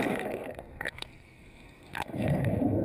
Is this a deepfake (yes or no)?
yes